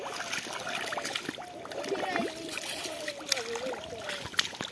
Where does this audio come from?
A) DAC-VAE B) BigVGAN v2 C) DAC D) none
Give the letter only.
D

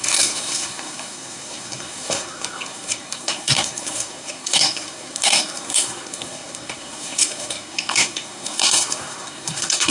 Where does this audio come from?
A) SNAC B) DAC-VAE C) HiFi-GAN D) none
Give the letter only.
A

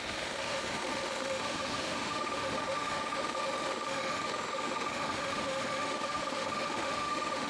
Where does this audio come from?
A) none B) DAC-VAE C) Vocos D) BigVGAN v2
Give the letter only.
B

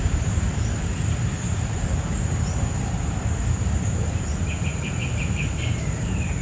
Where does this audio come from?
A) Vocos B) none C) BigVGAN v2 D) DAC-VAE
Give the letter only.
C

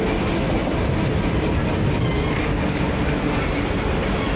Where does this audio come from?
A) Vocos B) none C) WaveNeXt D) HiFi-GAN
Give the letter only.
B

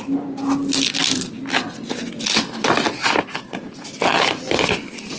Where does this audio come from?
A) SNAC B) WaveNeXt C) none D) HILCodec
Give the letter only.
C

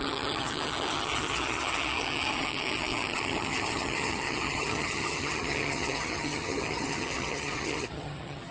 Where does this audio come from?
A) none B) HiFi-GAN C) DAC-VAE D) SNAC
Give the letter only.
B